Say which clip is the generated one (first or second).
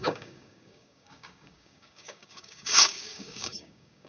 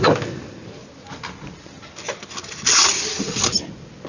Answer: first